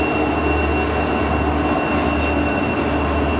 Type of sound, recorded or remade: recorded